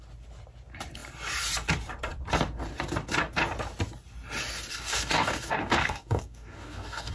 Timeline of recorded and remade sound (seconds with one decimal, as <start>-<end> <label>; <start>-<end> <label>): 0.0-4.7 recorded; 4.7-7.1 remade